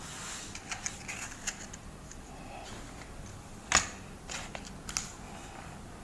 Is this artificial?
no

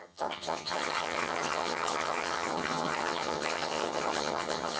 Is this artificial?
yes